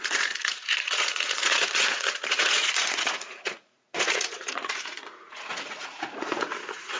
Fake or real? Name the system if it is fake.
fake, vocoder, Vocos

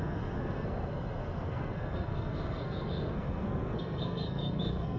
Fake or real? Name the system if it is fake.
fake, codec, SNAC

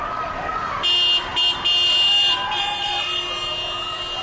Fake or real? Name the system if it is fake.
real